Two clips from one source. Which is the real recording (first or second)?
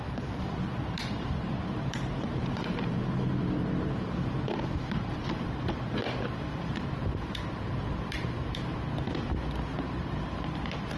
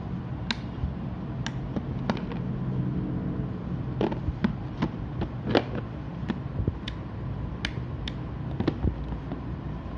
second